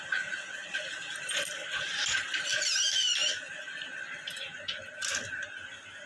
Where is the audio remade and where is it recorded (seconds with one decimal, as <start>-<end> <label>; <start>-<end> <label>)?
0.0-6.1 recorded